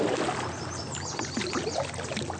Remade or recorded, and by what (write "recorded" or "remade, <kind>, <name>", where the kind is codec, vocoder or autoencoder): recorded